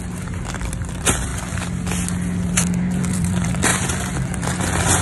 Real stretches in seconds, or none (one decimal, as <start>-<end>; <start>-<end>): 1.3-2.5